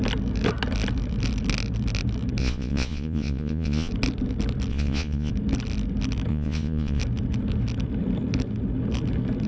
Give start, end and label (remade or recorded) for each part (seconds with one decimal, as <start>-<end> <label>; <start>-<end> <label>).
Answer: 0.0-2.4 recorded; 2.4-3.9 remade; 3.9-4.7 recorded; 4.7-5.3 remade; 5.3-6.3 recorded; 6.3-7.0 remade; 7.0-9.5 recorded